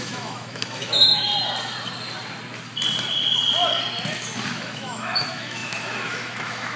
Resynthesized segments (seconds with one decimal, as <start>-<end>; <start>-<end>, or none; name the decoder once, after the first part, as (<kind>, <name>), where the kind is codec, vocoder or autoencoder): 0.0-1.3 (autoencoder, DAC-VAE); 4.5-6.8